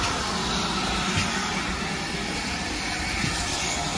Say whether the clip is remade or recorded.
recorded